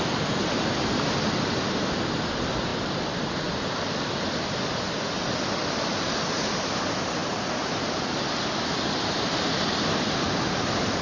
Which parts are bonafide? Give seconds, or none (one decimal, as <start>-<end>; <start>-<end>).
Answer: 0.0-11.0